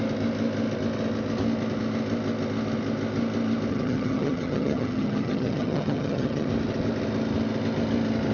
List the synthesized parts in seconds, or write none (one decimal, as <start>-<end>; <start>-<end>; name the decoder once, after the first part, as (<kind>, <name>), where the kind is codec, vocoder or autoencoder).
3.7-6.5 (vocoder, HiFi-GAN)